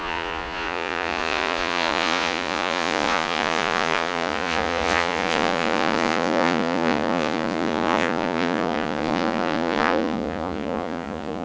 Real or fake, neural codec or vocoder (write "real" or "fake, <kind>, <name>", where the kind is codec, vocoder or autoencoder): fake, vocoder, Vocos